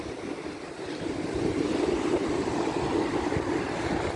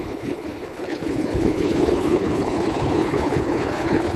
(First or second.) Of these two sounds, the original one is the first